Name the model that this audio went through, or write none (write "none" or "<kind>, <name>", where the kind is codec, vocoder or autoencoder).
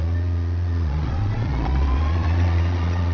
vocoder, Vocos